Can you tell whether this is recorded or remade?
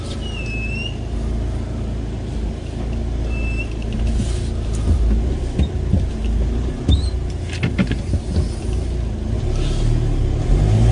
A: recorded